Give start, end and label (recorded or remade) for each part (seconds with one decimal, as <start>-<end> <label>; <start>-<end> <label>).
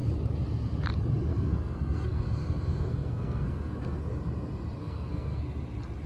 0.0-1.3 recorded; 1.3-4.0 remade; 4.0-4.8 recorded; 4.8-5.4 remade; 5.4-6.1 recorded